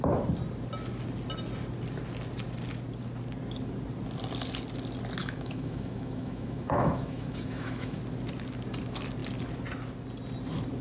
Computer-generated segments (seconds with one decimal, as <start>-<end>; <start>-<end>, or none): 5.2-8.0